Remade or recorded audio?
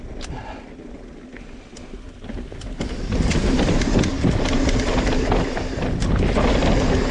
recorded